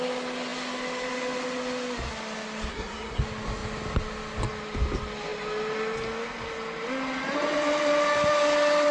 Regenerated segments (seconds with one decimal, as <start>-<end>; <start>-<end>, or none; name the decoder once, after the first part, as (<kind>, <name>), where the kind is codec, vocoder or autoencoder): 2.7-3.2 (codec, SNAC)